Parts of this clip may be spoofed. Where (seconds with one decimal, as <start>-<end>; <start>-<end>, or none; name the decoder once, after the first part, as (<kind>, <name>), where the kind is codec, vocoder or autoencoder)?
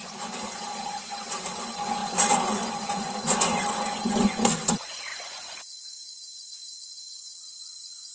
0.0-8.1 (vocoder, Vocos)